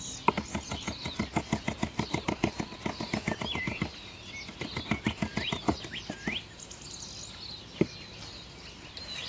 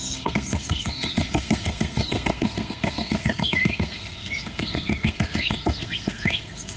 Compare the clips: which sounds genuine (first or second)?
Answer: first